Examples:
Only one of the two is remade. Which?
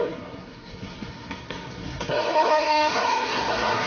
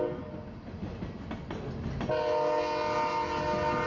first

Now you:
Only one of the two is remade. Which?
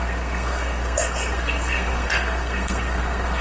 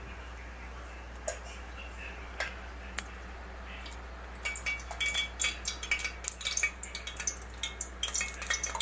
first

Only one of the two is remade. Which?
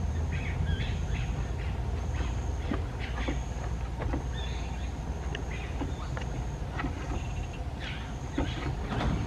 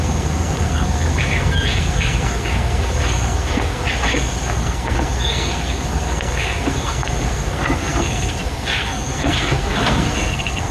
second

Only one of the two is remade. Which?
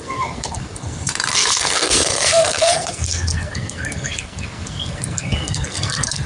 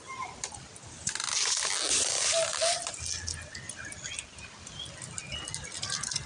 first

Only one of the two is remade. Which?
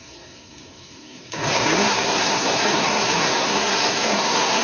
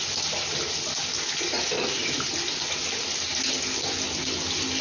first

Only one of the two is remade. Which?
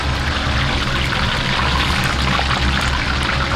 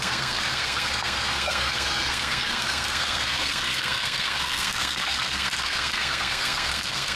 second